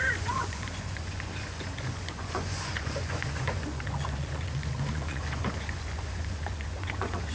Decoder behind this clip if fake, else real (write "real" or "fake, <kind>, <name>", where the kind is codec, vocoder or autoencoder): fake, vocoder, Vocos